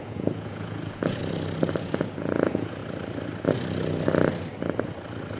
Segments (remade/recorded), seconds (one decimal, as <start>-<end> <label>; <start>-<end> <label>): 0.0-1.2 remade; 1.2-1.8 recorded; 1.8-2.8 remade; 2.8-5.4 recorded